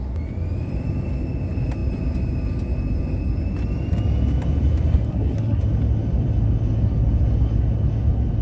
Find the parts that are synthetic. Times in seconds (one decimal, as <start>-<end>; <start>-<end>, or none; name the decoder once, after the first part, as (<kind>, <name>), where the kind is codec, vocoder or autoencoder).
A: 5.1-5.6 (codec, SNAC)